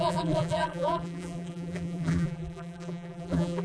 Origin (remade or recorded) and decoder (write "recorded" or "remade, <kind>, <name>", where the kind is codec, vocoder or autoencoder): remade, vocoder, BigVGAN v2